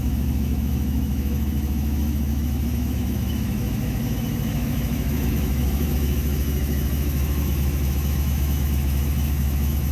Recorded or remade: remade